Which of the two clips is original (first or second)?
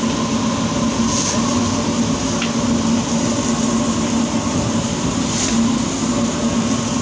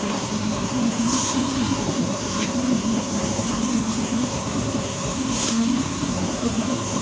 first